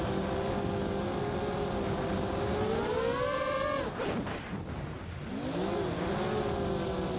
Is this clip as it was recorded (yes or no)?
yes